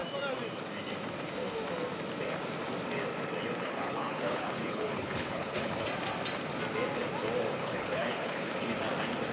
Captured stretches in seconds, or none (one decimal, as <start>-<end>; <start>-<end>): 0.0-3.6; 5.7-7.6; 8.5-9.3

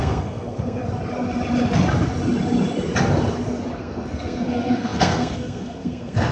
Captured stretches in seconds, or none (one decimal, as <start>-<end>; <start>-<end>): 0.8-3.8

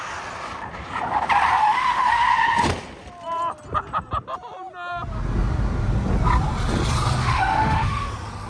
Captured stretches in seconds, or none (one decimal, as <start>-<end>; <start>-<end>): 0.0-1.6; 2.1-7.2; 8.1-8.5